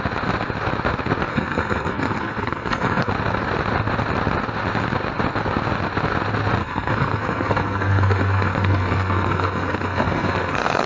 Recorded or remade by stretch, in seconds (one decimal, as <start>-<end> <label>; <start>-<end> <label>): 0.0-1.3 recorded; 1.3-3.1 remade; 3.1-6.6 recorded; 6.6-10.9 remade